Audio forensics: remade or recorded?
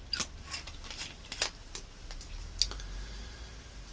recorded